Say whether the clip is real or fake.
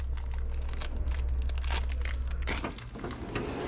real